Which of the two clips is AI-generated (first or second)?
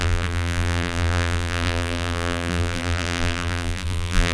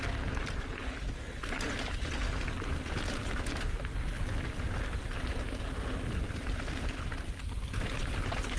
first